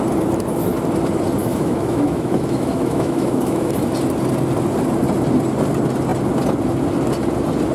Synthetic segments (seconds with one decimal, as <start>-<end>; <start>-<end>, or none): 1.4-3.7